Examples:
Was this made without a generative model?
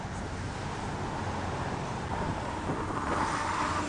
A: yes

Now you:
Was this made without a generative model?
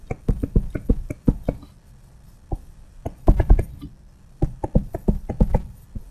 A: yes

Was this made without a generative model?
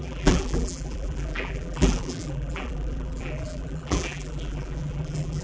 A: no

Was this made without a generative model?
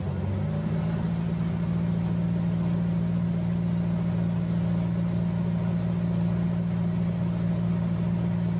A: yes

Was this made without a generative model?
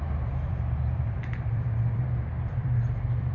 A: no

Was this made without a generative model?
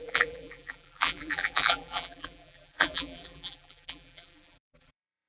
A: no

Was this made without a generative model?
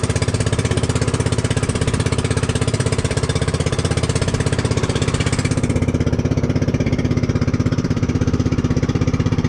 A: no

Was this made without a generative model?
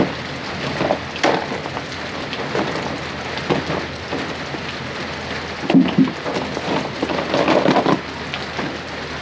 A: yes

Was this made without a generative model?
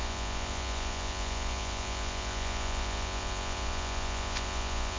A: no